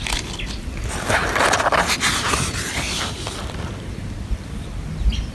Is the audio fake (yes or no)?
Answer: no